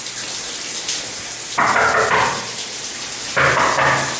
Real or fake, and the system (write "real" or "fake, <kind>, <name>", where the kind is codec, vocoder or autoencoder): real